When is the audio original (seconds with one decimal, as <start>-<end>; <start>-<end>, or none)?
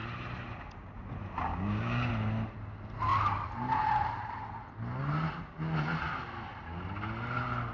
0.0-1.5; 2.1-7.7